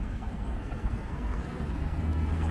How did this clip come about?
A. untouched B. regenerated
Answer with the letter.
B